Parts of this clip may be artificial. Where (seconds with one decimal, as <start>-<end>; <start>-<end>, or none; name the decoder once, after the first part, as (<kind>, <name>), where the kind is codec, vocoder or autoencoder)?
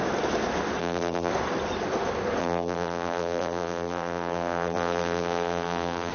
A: 0.8-1.3 (vocoder, BigVGAN v2); 2.4-6.1